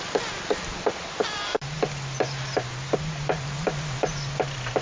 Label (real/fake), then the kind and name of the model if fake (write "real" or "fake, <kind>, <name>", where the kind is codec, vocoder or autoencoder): real